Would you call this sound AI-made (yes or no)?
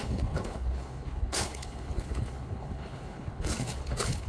yes